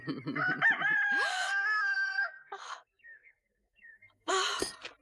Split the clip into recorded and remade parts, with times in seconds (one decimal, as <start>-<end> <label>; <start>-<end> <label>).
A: 0.0-1.3 recorded; 1.3-4.3 remade; 4.3-5.0 recorded